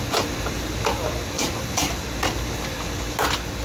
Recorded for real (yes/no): yes